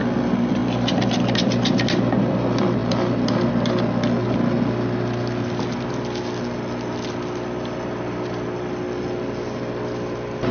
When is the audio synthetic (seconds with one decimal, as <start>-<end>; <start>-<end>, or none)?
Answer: none